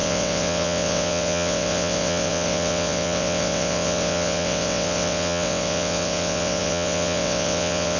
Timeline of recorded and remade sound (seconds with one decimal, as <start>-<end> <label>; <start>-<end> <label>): 0.0-8.0 remade